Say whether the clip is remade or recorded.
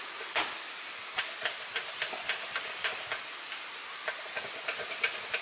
recorded